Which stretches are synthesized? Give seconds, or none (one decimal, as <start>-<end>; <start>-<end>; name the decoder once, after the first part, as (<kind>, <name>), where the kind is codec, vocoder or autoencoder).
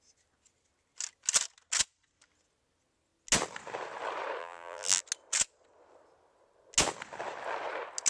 4.4-5.0 (vocoder, BigVGAN v2)